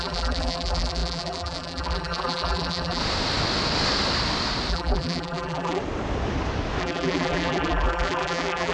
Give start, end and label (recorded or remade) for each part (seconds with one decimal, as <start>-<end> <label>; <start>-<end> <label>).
0.0-3.0 remade; 3.0-4.7 recorded; 4.7-5.8 remade; 5.8-6.8 recorded; 6.8-8.7 remade